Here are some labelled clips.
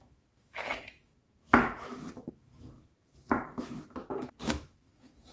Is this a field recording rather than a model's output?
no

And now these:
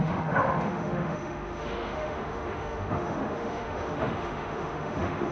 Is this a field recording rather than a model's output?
no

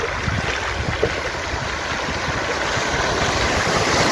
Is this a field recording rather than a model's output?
yes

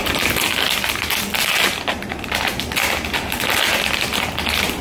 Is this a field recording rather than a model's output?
yes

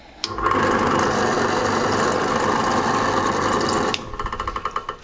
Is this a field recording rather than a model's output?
yes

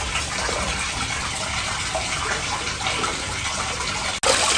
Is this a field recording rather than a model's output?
yes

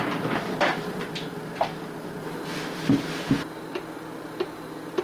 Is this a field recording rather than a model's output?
yes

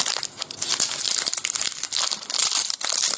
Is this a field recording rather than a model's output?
yes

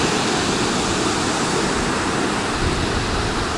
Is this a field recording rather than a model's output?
yes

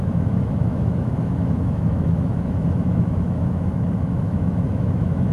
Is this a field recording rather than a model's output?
no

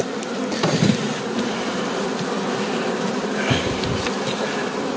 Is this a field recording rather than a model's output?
yes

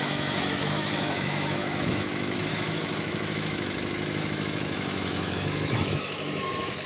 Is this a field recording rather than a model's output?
no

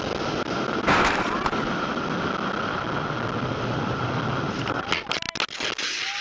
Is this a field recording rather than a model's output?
yes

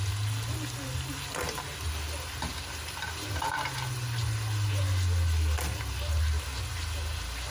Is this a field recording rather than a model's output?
yes